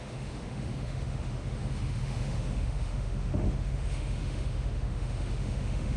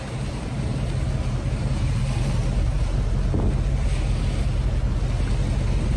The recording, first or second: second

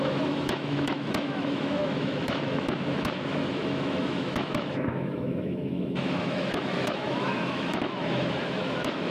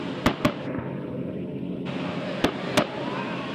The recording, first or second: second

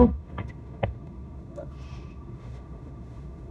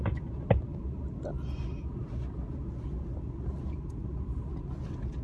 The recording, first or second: second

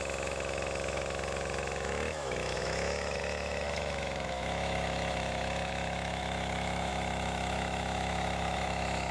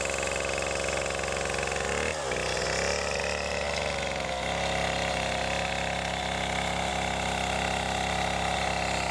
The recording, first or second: second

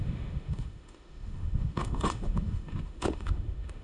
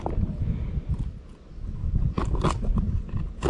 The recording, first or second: second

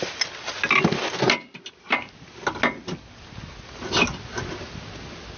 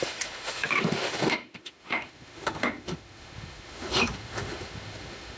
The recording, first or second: first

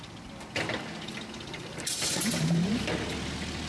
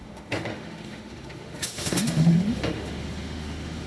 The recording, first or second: first